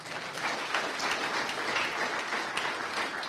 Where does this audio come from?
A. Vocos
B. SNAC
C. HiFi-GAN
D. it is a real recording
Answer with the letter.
D